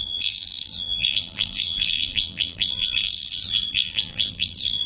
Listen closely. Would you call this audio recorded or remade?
remade